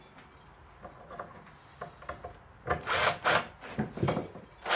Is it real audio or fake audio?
real